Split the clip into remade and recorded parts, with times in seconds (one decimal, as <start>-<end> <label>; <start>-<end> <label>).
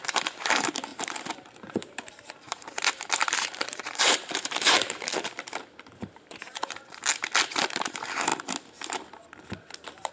0.0-7.0 remade; 7.0-7.5 recorded; 7.5-8.3 remade; 8.3-10.1 recorded